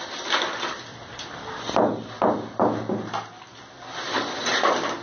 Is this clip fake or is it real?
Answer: real